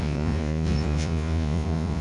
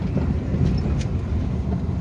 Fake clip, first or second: first